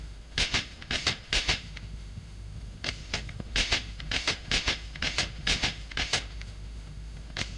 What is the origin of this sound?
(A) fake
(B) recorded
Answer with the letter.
A